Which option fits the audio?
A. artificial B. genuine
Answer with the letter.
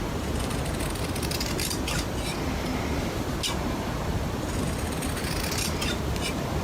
B